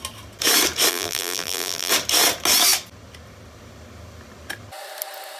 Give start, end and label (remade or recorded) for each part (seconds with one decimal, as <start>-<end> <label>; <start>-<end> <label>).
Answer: 0.0-0.9 recorded; 0.9-1.9 remade; 1.9-5.4 recorded